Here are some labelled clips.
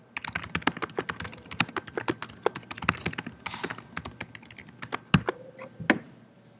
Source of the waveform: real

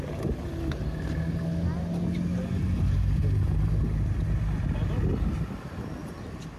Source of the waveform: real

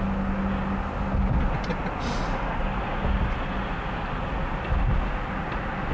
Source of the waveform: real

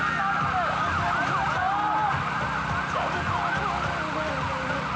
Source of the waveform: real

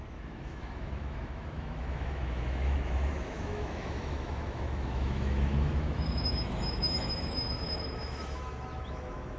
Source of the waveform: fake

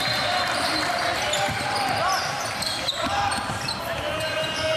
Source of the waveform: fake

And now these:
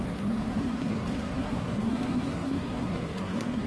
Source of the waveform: fake